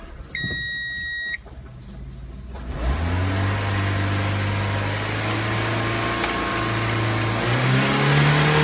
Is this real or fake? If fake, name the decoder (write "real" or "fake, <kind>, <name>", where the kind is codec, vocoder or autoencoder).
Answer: real